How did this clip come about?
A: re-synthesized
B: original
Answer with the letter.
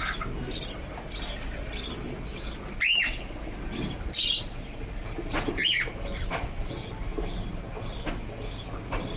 B